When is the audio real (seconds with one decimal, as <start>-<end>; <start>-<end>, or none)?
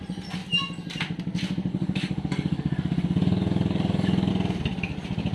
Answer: 0.0-1.7; 4.3-5.3